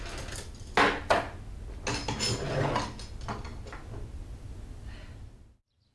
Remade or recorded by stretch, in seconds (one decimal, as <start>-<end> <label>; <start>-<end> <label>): 0.0-5.9 recorded